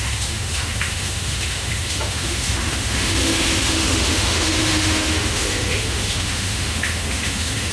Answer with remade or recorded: remade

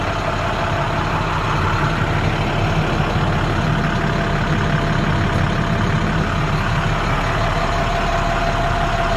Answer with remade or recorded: recorded